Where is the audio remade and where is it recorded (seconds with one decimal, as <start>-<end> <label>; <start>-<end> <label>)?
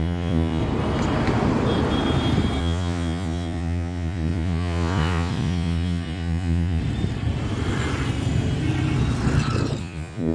0.0-0.6 remade; 0.6-2.6 recorded; 2.6-6.8 remade; 6.8-9.8 recorded; 9.8-10.3 remade